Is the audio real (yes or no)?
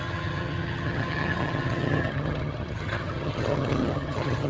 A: no